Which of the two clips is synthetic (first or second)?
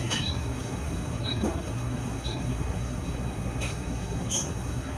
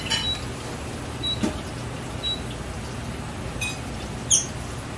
first